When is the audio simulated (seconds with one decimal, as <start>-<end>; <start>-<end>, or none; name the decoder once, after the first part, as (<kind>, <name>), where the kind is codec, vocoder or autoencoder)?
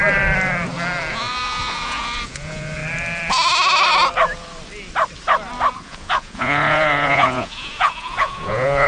1.1-2.8 (vocoder, Vocos); 5.7-8.9